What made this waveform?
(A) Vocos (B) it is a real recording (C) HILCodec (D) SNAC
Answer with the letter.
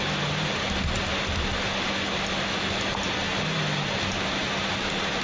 B